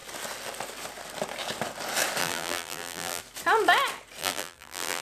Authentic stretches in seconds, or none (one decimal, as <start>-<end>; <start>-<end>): 0.0-2.2; 3.2-4.2